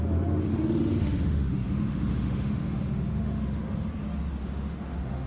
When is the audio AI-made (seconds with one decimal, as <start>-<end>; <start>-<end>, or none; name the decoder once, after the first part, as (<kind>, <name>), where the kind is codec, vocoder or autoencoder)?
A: 0.5-3.7 (autoencoder, DAC-VAE); 4.4-5.3